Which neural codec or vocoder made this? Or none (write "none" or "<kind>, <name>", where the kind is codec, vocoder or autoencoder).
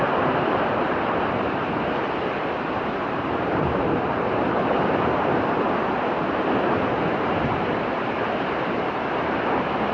vocoder, BigVGAN v2